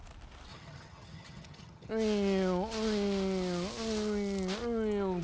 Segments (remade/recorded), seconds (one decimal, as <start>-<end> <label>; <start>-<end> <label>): 0.0-0.5 recorded; 0.5-1.9 remade; 1.9-5.2 recorded